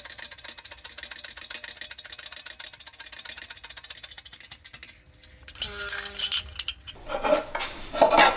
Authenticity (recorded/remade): recorded